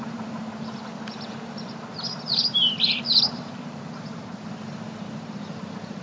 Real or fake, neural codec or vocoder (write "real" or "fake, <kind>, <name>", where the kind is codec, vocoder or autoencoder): fake, vocoder, BigVGAN v2